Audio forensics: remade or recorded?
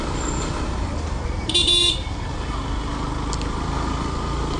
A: recorded